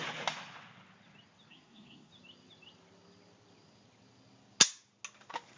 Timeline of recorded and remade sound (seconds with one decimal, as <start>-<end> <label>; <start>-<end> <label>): 0.0-1.5 recorded; 1.5-2.1 remade; 2.1-5.6 recorded